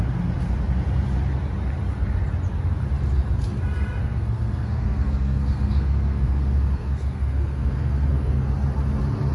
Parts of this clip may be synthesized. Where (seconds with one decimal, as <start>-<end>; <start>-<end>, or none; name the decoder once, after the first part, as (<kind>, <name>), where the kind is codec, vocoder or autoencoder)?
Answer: 4.0-8.5 (codec, SNAC)